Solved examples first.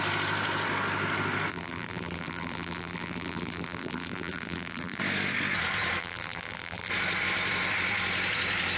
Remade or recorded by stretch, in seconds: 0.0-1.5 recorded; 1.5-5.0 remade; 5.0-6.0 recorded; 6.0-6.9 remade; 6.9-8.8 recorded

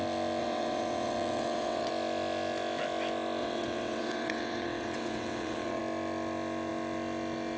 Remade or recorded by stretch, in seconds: 0.0-0.4 recorded; 0.4-1.9 remade; 1.9-3.4 recorded; 3.4-5.8 remade; 5.8-7.6 recorded

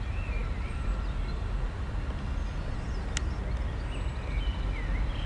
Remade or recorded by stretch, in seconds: 0.0-5.3 recorded